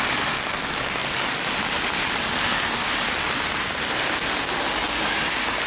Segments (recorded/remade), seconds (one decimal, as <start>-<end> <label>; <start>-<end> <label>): 0.0-5.7 recorded